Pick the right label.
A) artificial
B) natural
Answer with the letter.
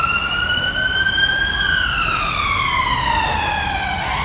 B